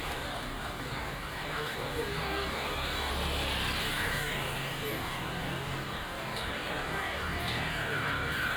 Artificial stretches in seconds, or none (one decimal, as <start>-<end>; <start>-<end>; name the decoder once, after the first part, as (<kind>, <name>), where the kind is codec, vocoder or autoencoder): 0.0-3.1 (codec, DAC); 3.8-8.6

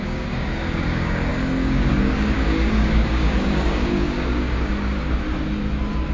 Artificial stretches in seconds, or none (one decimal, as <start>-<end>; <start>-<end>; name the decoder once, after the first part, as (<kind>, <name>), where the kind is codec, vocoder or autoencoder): 0.0-4.7 (codec, DAC)

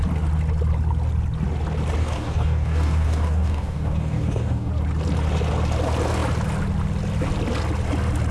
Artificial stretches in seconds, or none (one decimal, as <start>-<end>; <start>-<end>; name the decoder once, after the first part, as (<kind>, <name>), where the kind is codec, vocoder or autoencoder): 2.0-4.7 (codec, DAC)

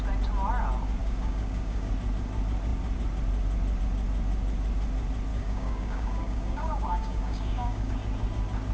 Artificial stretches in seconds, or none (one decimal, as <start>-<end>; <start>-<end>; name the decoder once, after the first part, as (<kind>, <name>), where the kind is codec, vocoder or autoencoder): 1.0-1.9 (codec, DAC); 5.3-7.9

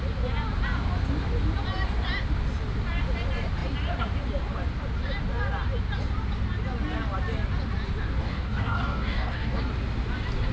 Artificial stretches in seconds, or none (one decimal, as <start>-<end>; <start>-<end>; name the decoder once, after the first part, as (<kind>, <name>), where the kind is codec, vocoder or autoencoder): 8.2-9.6 (codec, DAC)

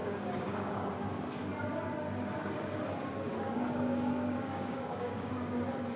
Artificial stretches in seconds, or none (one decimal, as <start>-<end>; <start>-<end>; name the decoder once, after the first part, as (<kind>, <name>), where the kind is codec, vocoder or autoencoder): 0.0-0.9 (codec, DAC); 3.3-5.3

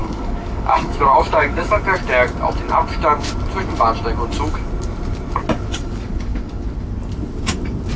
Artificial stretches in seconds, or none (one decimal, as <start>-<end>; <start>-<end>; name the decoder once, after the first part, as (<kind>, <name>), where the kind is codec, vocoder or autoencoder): 0.0-1.8 (codec, DAC); 5.7-6.6

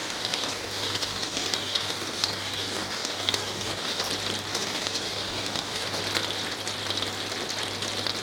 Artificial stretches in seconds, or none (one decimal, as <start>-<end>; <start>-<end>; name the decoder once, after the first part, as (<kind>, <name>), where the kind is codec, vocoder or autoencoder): 0.0-4.1 (codec, DAC); 4.5-6.0